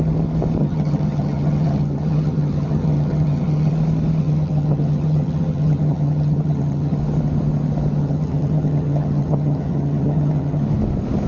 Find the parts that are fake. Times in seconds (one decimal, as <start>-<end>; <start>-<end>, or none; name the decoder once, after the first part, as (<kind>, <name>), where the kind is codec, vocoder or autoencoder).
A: 0.6-3.7 (vocoder, HiFi-GAN); 4.2-7.0; 8.0-10.6